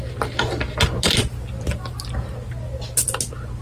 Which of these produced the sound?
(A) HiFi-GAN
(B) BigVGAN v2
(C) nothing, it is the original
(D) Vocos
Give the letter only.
C